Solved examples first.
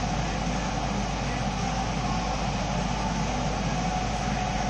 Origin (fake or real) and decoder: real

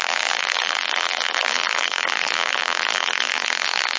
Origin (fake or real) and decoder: fake, vocoder, BigVGAN v2